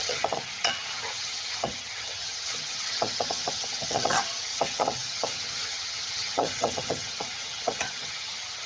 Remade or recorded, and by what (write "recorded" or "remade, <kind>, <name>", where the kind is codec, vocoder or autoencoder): remade, vocoder, HiFi-GAN